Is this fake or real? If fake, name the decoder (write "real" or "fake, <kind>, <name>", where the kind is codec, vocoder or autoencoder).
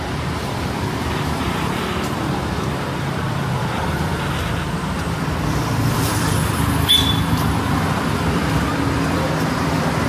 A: fake, vocoder, BigVGAN v2